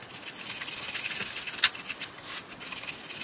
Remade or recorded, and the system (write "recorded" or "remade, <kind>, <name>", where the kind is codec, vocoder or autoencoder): recorded